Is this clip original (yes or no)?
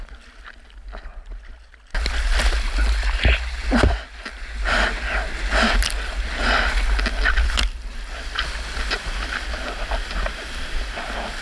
yes